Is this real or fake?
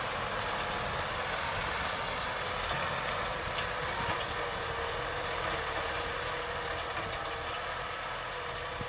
real